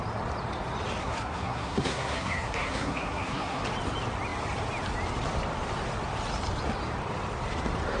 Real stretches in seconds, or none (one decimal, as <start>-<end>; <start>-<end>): 0.0-1.0; 3.6-8.0